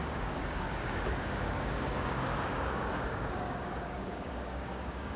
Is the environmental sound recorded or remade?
remade